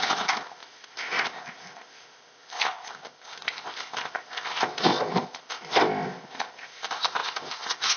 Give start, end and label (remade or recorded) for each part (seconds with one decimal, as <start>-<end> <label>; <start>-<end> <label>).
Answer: 0.0-8.0 remade